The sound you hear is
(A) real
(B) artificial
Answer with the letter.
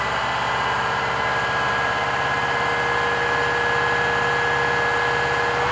A